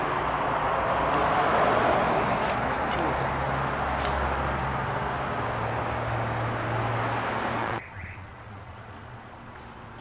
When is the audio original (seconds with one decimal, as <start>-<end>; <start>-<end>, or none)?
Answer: 0.0-7.6; 9.6-10.0

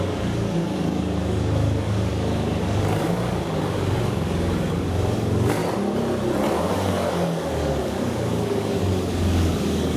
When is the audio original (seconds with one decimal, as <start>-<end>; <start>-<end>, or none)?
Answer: 5.6-6.5

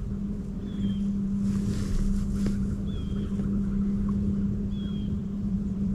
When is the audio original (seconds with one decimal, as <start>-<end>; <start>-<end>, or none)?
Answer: 0.0-5.2

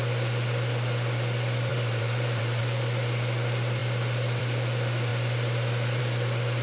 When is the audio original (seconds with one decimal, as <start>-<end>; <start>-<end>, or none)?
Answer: 0.0-1.7; 2.6-6.6

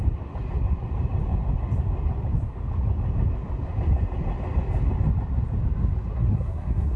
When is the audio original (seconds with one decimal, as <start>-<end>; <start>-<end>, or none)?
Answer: 0.0-6.1

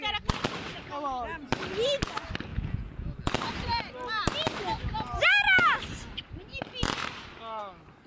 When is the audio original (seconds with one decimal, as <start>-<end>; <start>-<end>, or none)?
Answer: 0.0-2.5; 3.1-8.1